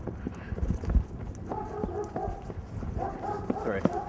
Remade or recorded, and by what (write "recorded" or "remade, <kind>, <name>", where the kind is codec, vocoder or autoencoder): recorded